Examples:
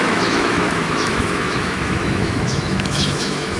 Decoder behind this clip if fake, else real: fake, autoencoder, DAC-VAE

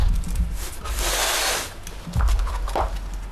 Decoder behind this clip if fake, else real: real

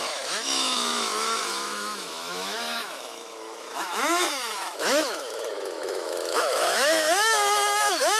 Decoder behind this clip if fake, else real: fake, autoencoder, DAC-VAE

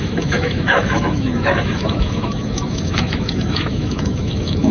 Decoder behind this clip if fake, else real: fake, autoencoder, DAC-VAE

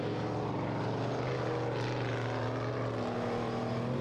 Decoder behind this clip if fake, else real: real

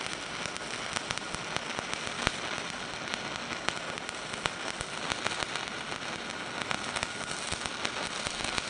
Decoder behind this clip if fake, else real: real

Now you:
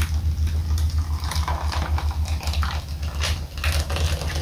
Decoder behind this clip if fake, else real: real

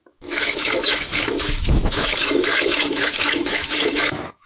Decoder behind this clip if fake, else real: fake, autoencoder, DAC-VAE